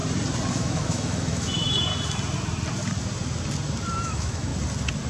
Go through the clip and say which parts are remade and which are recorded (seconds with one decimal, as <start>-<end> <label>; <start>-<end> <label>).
0.0-0.5 recorded; 0.5-1.9 remade; 1.9-4.0 recorded; 4.0-4.5 remade; 4.5-5.1 recorded